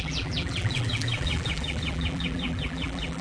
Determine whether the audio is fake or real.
fake